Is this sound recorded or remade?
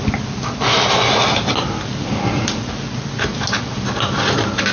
recorded